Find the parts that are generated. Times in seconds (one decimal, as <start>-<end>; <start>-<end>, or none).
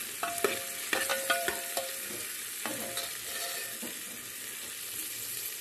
1.1-2.1